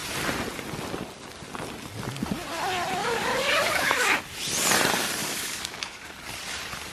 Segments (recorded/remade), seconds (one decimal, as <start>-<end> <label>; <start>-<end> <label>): 0.0-3.0 recorded; 3.0-4.2 remade; 4.2-5.2 recorded; 5.2-6.1 remade; 6.1-6.9 recorded